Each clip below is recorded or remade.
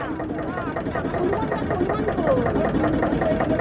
recorded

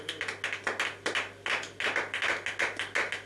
recorded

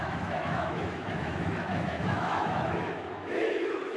remade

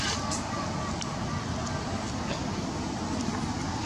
recorded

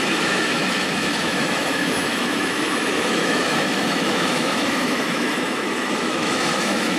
remade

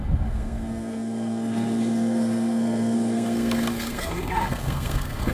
remade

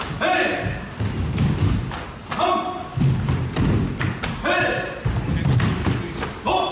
recorded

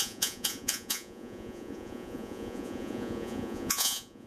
remade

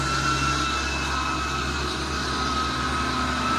recorded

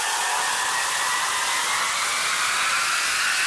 recorded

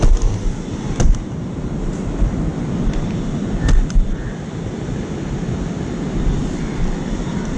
recorded